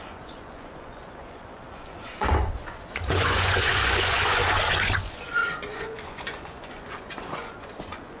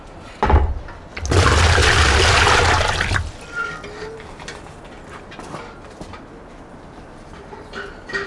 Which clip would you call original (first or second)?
second